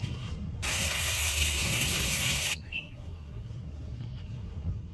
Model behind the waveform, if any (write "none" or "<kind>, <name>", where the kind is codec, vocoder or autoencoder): codec, SNAC